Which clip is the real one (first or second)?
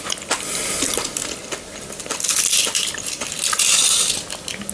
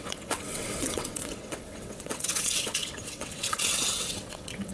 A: first